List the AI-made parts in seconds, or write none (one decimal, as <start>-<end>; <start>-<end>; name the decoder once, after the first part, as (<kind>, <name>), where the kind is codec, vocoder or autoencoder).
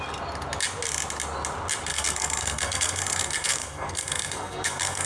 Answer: 1.9-5.1 (codec, SNAC)